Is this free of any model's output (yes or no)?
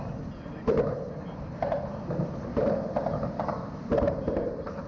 yes